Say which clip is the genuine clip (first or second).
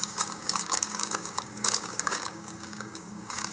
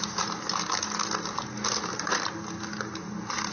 second